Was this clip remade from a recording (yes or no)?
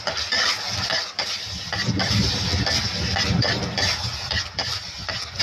no